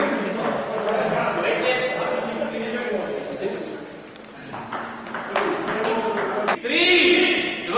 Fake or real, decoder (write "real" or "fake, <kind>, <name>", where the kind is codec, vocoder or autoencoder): real